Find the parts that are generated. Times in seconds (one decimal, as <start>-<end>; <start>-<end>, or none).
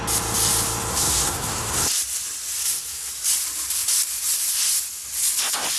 0.9-1.9; 2.6-3.1